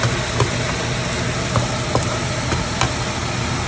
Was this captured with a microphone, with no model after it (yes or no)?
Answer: yes